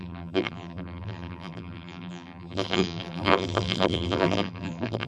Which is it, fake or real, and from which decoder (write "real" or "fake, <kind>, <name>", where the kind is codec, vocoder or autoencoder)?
fake, vocoder, BigVGAN v2